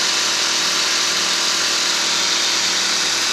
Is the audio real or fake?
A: real